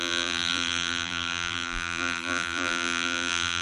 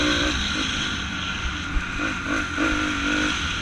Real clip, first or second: second